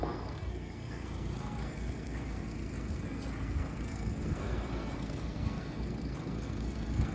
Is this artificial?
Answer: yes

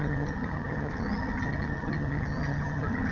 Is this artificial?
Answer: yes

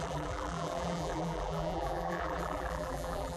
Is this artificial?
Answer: yes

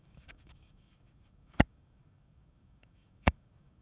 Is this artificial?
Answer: yes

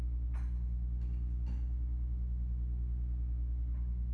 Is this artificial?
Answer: no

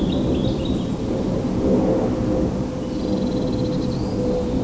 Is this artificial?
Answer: no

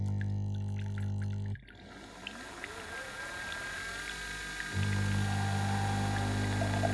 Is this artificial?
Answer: no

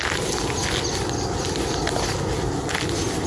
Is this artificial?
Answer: no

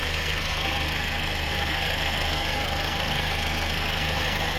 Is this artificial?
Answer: yes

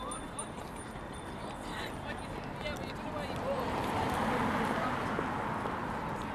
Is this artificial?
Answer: no